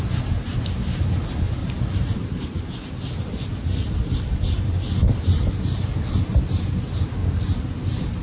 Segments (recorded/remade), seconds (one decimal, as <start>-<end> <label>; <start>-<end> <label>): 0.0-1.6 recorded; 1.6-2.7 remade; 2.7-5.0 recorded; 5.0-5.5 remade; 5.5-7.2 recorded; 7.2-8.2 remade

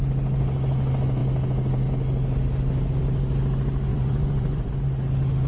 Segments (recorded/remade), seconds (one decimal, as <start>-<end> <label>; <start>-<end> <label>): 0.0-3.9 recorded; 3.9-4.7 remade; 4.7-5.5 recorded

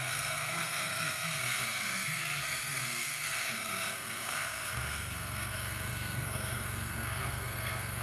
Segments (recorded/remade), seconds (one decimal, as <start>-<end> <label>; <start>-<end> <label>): 0.0-8.0 remade